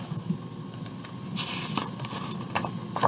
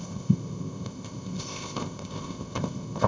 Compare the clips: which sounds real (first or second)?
first